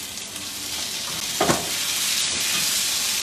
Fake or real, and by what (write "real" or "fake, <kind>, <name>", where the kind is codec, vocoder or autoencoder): real